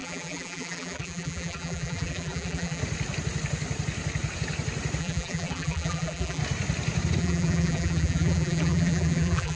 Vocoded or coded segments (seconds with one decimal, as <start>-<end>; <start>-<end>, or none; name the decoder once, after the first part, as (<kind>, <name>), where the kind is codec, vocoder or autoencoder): 0.0-2.8 (vocoder, BigVGAN v2); 5.0-6.4; 7.2-9.6